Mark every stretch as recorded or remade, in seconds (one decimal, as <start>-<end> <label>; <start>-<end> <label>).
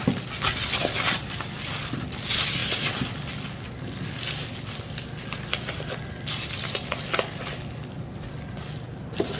0.0-9.4 recorded